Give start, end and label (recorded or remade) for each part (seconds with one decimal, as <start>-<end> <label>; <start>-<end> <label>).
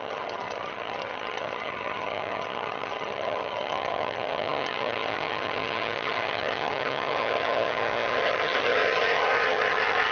0.0-10.1 remade